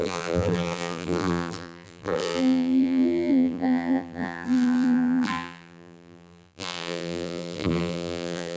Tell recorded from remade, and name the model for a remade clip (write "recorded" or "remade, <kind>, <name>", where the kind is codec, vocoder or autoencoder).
remade, vocoder, BigVGAN v2